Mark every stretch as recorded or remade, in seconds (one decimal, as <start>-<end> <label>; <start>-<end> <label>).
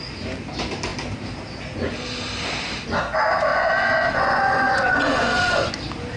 0.0-3.5 recorded; 3.5-5.7 remade; 5.7-6.2 recorded